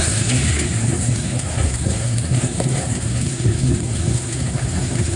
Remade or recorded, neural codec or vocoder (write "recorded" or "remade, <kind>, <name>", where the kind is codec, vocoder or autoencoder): remade, codec, SNAC